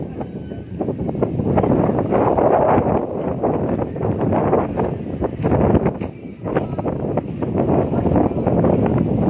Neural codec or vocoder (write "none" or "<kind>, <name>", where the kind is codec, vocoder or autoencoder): none